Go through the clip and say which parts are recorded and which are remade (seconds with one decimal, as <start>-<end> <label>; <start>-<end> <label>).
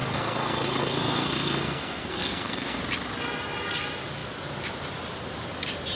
0.0-2.8 remade; 2.8-5.9 recorded